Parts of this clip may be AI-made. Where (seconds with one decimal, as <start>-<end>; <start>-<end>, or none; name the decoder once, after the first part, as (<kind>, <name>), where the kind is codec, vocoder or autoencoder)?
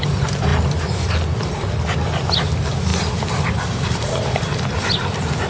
0.5-1.7 (vocoder, BigVGAN v2); 2.9-5.5